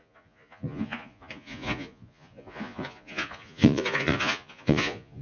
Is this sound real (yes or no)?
no